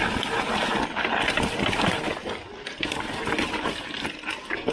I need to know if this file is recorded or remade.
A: recorded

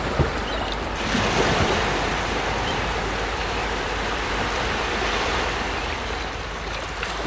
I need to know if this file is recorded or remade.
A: remade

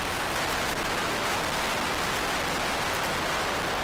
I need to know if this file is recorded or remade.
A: recorded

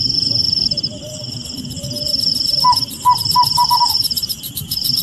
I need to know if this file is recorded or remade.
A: remade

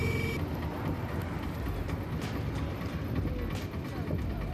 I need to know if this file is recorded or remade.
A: recorded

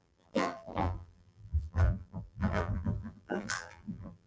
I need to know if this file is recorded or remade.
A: remade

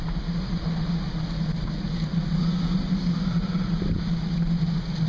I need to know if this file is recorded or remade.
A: recorded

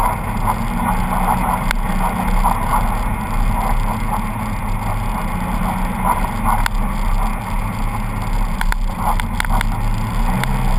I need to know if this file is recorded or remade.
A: recorded